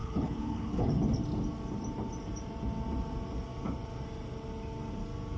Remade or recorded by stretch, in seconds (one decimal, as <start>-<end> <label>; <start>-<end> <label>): 0.0-0.9 remade; 0.9-5.4 recorded